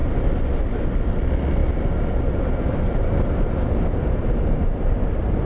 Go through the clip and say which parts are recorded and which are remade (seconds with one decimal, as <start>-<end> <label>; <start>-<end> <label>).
0.0-1.6 recorded; 1.6-4.8 remade; 4.8-5.4 recorded